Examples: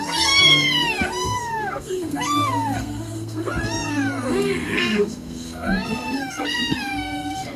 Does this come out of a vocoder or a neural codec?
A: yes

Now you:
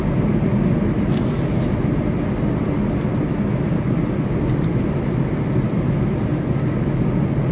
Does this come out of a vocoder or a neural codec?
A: no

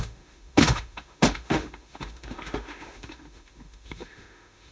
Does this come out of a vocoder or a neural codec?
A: yes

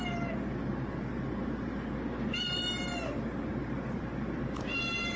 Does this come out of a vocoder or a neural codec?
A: no